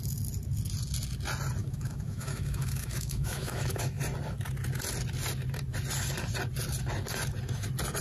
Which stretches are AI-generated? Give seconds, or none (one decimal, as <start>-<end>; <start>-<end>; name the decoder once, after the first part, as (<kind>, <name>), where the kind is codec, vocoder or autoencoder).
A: 1.6-4.0 (autoencoder, DAC-VAE)